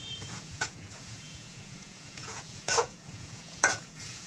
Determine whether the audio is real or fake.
fake